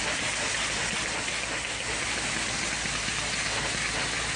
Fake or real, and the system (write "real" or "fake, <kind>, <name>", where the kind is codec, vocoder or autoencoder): real